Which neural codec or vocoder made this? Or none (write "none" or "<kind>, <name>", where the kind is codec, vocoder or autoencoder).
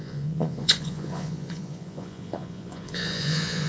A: vocoder, Vocos